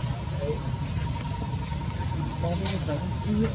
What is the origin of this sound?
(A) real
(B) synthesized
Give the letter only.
A